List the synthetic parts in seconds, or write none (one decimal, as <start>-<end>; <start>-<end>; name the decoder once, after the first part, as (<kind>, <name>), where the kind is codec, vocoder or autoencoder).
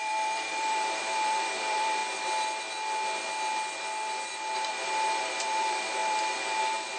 0.0-2.0 (vocoder, BigVGAN v2); 4.7-7.0